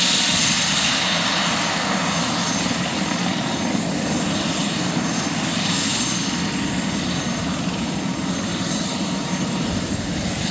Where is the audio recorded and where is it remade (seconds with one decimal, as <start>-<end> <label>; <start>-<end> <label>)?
0.0-2.2 recorded; 2.2-3.6 remade; 3.6-8.5 recorded; 8.5-10.5 remade